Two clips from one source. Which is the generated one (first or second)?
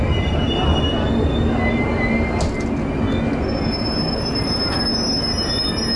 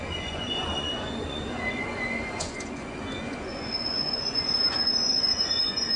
second